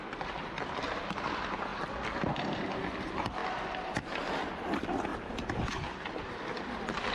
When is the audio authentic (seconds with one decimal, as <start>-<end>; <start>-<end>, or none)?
0.0-5.1; 6.3-7.1